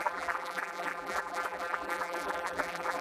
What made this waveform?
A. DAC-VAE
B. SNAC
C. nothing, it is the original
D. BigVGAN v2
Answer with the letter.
D